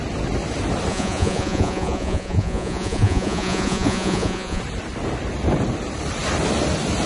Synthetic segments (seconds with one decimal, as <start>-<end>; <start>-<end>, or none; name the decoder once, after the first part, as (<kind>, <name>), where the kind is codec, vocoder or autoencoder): 0.9-4.6 (vocoder, Vocos)